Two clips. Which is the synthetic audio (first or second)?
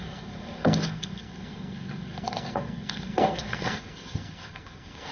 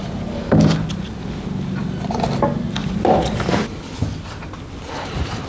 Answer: first